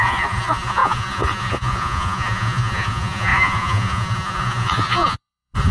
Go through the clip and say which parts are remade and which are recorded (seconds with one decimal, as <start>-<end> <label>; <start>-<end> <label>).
0.0-5.7 remade